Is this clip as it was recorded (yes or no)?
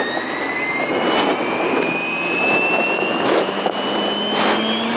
yes